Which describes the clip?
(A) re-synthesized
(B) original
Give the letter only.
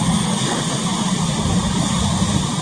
B